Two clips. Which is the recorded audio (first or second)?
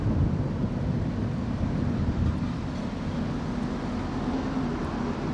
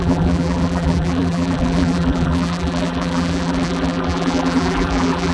first